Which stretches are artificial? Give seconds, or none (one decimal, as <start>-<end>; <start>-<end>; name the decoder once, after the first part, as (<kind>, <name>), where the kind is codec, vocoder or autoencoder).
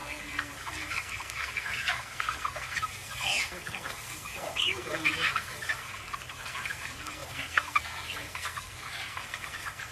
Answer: 0.0-9.9 (codec, SNAC)